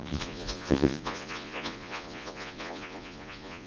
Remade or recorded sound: remade